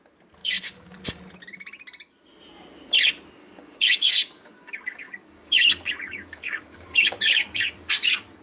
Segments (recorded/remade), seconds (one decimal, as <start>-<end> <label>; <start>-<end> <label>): 0.0-0.4 recorded; 0.4-1.0 remade; 1.0-3.4 recorded; 3.4-8.4 remade